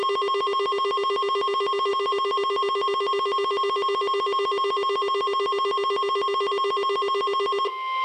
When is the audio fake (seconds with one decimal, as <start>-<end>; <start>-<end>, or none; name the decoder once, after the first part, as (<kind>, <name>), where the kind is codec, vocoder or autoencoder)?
none